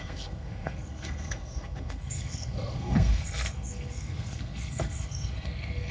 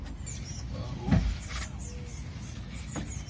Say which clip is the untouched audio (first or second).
second